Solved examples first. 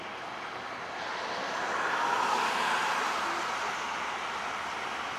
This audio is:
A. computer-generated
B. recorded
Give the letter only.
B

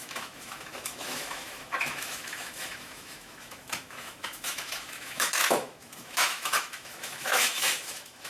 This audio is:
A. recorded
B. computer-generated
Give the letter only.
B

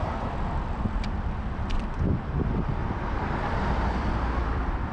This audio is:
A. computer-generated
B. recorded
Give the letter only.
A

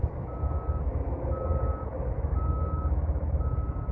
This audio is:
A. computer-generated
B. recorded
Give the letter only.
A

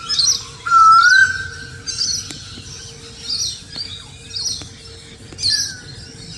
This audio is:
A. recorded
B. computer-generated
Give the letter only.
A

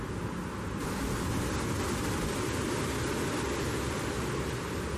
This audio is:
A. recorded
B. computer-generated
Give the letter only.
A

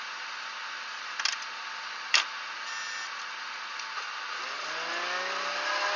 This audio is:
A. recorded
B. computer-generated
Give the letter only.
A